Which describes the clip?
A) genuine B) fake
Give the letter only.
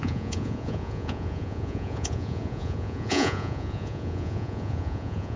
B